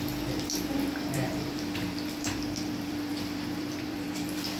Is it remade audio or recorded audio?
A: remade